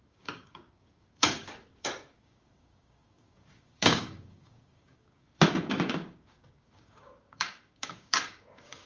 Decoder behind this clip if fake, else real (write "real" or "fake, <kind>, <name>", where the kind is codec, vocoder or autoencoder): fake, codec, DAC